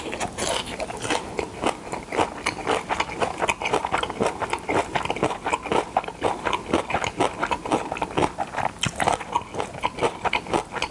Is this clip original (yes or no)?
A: yes